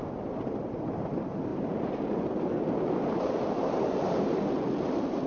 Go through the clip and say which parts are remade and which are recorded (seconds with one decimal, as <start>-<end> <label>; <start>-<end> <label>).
0.0-5.3 recorded